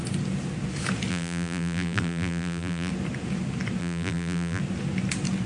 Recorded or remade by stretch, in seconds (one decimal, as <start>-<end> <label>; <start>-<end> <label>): 0.0-1.1 recorded; 1.1-2.9 remade; 2.9-3.8 recorded; 3.8-4.6 remade; 4.6-5.5 recorded